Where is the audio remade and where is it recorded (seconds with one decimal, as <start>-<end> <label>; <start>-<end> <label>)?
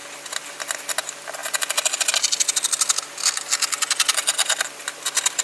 0.0-5.4 recorded